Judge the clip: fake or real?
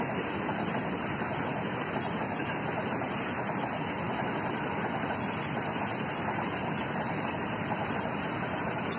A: real